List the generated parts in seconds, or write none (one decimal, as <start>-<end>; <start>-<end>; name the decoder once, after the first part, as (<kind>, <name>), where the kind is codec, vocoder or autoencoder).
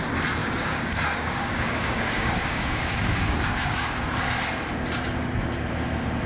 0.4-4.0 (codec, DAC)